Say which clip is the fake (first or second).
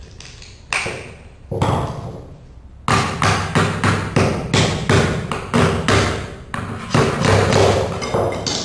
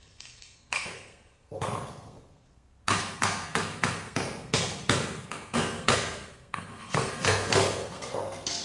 second